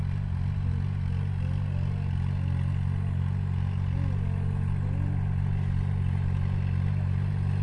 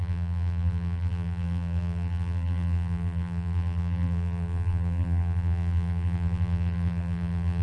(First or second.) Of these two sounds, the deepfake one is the second